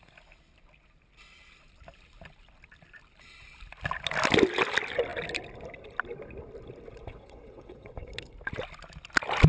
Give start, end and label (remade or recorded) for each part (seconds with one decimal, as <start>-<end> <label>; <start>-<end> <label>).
0.0-7.1 recorded; 7.1-8.1 remade; 8.1-9.5 recorded

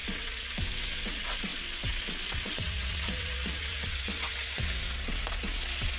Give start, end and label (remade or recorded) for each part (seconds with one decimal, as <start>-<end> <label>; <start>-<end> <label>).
0.0-6.0 remade

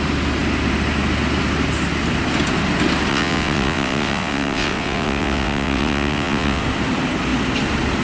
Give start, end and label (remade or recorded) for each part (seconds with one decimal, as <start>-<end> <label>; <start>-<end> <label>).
0.0-3.1 recorded; 3.1-6.6 remade; 6.6-8.0 recorded

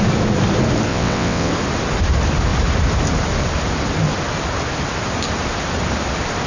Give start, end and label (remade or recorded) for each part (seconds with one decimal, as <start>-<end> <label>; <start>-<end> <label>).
0.0-0.9 recorded; 0.9-1.5 remade; 1.5-6.5 recorded

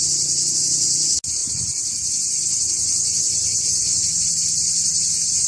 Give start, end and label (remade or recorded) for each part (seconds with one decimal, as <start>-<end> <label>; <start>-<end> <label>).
0.0-5.5 recorded

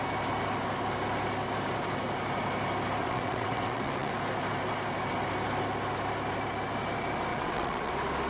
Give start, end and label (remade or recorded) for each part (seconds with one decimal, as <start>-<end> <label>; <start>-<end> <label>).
0.0-3.0 recorded; 3.0-4.1 remade; 4.1-7.3 recorded; 7.3-7.9 remade; 7.9-8.3 recorded